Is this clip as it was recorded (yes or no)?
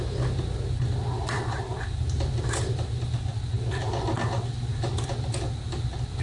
yes